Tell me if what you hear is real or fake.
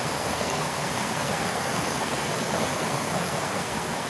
fake